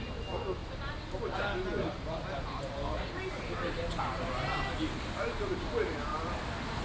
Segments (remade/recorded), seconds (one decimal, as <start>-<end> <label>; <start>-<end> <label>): 0.0-6.8 recorded